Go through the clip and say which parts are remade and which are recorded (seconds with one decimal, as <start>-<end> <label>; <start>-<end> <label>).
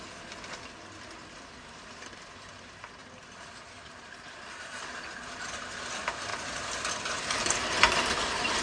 0.0-8.6 recorded